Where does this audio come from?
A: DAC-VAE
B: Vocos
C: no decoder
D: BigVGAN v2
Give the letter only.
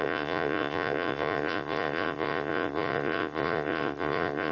B